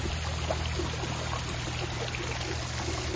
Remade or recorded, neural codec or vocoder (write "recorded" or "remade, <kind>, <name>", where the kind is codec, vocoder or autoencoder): recorded